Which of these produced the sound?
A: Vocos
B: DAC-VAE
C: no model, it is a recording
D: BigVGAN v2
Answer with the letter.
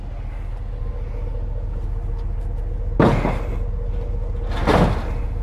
C